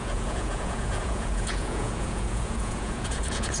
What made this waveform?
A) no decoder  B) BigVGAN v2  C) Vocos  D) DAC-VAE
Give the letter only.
C